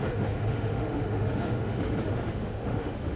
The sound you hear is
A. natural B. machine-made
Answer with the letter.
B